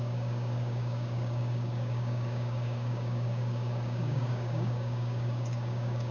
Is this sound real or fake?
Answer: fake